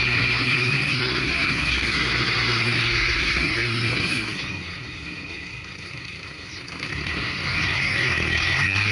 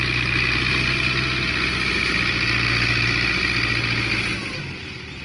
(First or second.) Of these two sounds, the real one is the second